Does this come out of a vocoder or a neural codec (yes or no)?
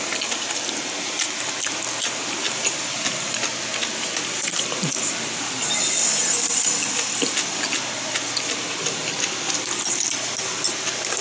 no